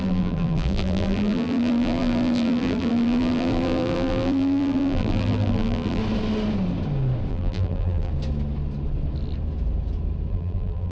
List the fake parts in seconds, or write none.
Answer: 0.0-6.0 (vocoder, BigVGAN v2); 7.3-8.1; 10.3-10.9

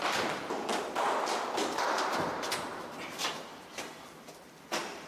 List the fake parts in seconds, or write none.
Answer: 0.0-5.1 (vocoder, BigVGAN v2)

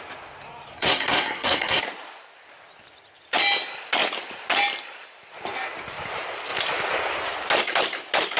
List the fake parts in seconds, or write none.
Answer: 0.7-1.8 (codec, SNAC)

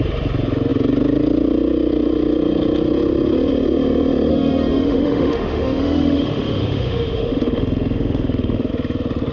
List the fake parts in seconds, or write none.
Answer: 4.3-8.7 (autoencoder, DAC-VAE)

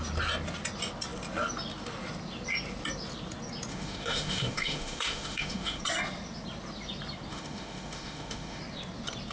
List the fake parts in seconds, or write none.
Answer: 3.7-5.8 (autoencoder, DAC-VAE); 7.3-8.6